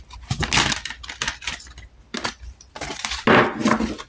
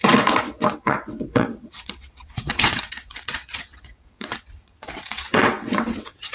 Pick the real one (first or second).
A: first